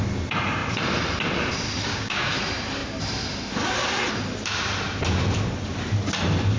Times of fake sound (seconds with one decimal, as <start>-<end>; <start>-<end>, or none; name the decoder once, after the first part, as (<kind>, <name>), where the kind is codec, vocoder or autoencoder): 1.9-2.4 (codec, DAC)